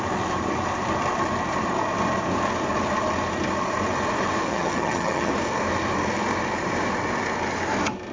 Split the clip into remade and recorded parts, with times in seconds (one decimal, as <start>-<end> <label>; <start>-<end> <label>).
0.0-4.5 recorded; 4.5-5.3 remade; 5.3-8.1 recorded